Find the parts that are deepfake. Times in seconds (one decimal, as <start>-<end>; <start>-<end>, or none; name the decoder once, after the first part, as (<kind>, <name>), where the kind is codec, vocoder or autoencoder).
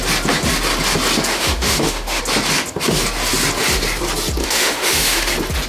1.3-2.2 (autoencoder, DAC-VAE); 4.4-5.3